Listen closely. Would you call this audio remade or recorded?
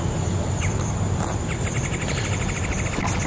recorded